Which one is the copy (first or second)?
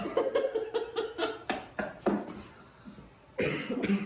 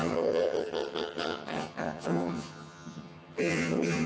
second